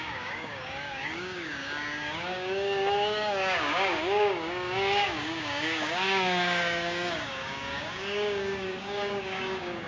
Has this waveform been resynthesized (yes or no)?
yes